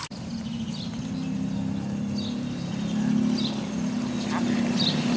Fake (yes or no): no